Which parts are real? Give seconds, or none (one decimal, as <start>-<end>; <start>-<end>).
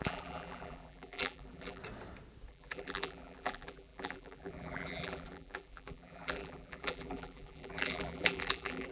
1.8-2.5